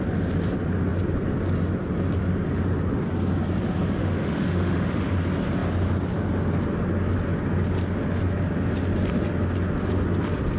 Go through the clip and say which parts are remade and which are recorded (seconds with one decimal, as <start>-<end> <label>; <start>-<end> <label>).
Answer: 0.0-4.0 recorded; 4.0-5.1 remade; 5.1-10.6 recorded